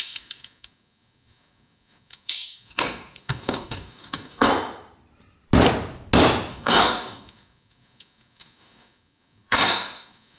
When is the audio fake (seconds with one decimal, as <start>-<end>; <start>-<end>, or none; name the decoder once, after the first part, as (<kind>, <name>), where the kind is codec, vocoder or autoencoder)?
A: 0.0-4.5 (codec, DAC); 6.5-10.4